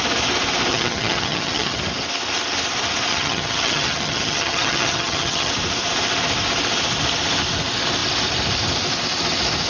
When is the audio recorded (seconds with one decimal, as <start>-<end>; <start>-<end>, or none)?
0.0-0.7; 1.8-3.1; 5.5-9.7